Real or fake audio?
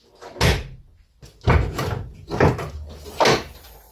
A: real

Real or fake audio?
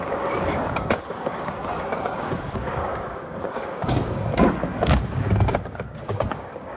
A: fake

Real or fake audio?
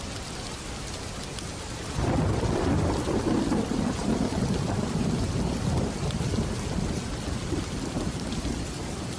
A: real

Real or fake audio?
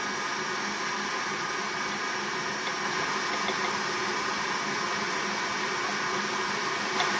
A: real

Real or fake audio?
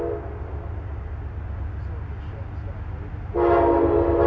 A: real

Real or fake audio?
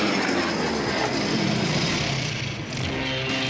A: real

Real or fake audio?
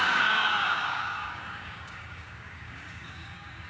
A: fake